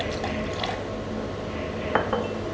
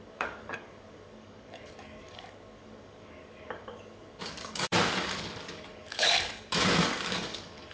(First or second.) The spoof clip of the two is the second